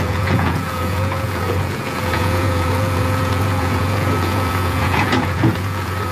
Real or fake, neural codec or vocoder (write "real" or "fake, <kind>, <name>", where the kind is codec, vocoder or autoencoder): fake, vocoder, Vocos